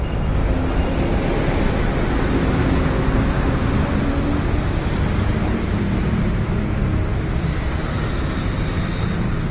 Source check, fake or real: real